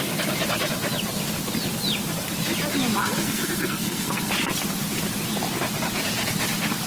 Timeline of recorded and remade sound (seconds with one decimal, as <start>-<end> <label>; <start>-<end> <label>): 0.0-3.0 recorded; 3.0-4.3 remade; 4.3-6.9 recorded